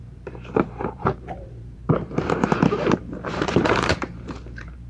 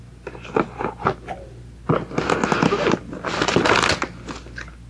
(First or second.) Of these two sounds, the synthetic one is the first